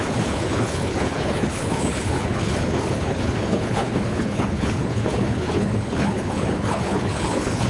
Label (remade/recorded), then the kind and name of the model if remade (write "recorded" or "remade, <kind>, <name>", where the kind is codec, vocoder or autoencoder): remade, codec, HILCodec